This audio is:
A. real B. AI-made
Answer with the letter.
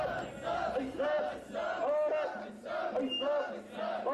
A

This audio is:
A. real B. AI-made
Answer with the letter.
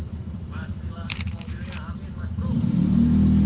B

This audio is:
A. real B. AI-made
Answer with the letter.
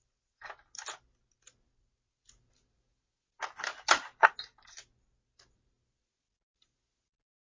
A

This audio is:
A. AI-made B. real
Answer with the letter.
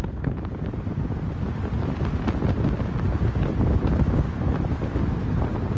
B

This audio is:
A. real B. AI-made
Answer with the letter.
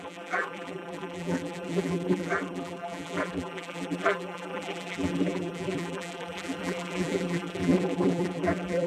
B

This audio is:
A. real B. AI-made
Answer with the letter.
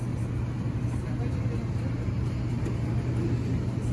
A